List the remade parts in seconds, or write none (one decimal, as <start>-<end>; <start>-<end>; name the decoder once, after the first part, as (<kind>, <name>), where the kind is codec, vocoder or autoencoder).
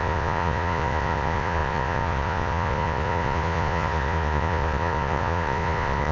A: 0.0-6.1 (vocoder, Vocos)